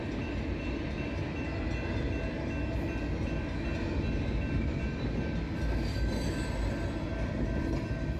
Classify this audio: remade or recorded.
recorded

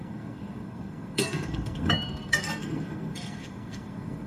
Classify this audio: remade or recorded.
remade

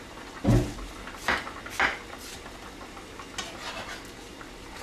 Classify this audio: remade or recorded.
recorded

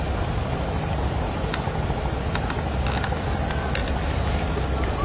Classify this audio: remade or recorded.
recorded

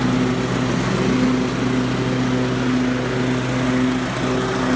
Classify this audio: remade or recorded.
recorded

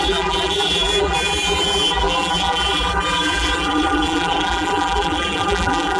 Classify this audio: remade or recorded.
remade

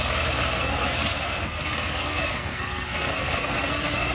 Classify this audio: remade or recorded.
remade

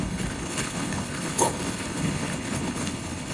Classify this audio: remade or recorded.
remade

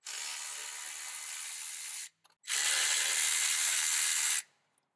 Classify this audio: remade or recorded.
recorded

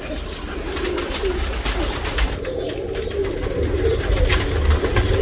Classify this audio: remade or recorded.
recorded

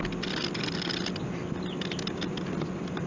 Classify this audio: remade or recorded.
recorded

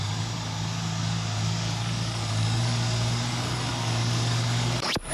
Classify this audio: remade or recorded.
remade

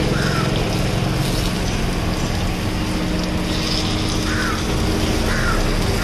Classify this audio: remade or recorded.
recorded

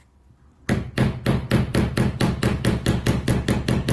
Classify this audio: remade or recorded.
recorded